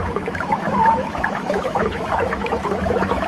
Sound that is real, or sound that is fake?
fake